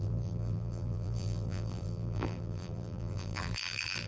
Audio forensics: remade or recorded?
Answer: remade